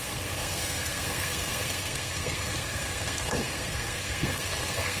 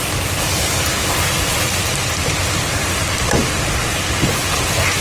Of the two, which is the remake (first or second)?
first